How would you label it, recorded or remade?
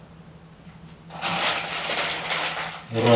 recorded